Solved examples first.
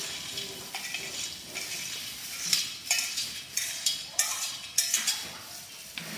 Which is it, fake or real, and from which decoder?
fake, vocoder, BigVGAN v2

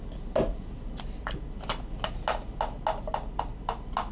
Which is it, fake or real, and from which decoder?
real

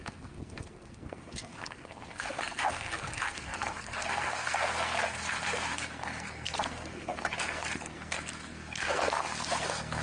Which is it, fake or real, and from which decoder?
fake, codec, SNAC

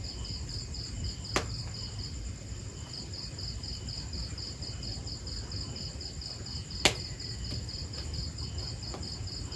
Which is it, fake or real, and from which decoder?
real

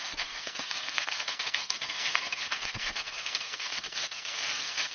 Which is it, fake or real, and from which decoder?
fake, codec, SNAC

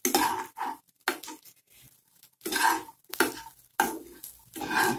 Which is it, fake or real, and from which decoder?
real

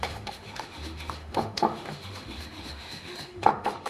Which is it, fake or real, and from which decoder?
fake, autoencoder, DAC-VAE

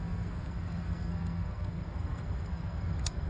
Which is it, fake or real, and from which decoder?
fake, codec, SNAC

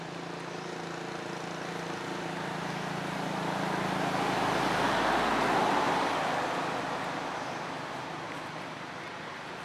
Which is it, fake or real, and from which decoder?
real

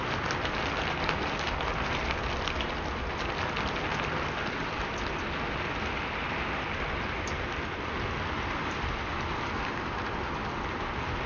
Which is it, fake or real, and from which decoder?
real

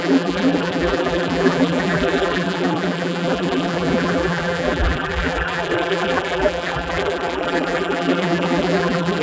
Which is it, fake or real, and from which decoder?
fake, vocoder, BigVGAN v2